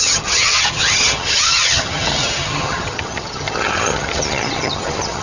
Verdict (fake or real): fake